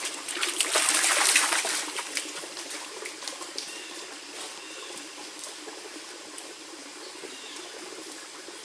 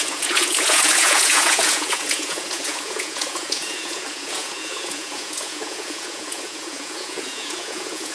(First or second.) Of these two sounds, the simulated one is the second